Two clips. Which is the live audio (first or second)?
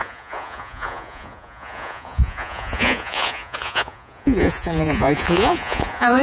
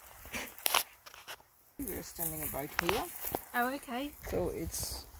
second